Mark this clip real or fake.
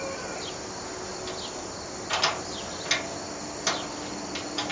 real